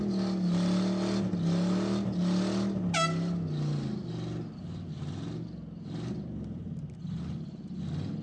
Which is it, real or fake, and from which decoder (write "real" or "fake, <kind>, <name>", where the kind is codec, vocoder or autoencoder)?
real